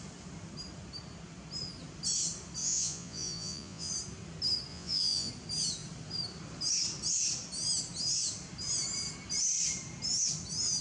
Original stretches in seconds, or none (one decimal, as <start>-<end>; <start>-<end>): 0.0-2.6; 3.9-4.7; 5.3-10.8